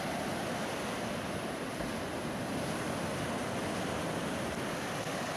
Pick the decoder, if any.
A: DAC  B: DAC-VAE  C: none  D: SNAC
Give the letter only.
C